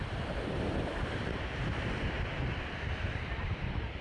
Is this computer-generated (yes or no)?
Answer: yes